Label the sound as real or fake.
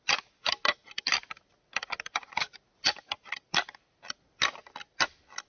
real